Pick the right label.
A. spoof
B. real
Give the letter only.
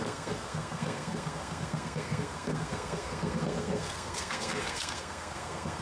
A